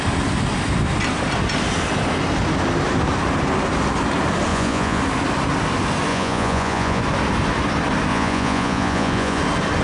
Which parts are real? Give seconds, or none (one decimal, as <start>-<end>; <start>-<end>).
0.0-4.5; 5.0-6.1; 7.0-8.1; 9.4-9.8